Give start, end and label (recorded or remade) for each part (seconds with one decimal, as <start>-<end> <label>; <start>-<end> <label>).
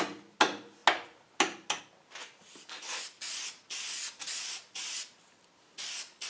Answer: 0.0-6.3 recorded